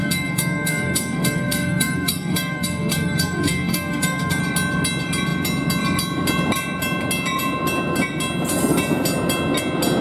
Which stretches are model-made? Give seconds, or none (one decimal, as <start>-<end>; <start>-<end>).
0.0-4.4